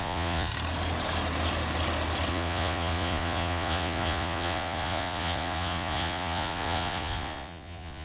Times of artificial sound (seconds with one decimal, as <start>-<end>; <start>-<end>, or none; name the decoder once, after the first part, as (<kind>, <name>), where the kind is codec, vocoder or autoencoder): 0.0-0.5 (vocoder, Vocos); 2.3-8.0